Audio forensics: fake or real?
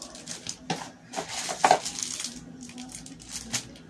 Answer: real